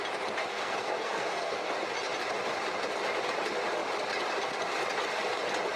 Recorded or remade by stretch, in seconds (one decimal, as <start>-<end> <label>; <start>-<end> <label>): 0.0-0.5 recorded; 0.5-1.7 remade; 1.7-5.8 recorded